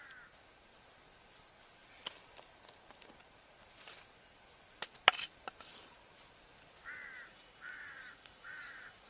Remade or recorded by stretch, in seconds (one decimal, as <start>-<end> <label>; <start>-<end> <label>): 0.0-7.3 recorded; 7.3-9.1 remade